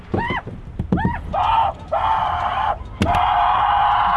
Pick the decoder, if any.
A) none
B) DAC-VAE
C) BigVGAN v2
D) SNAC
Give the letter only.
A